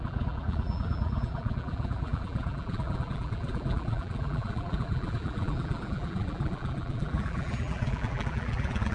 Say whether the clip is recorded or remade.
remade